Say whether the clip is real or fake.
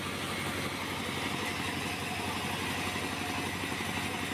real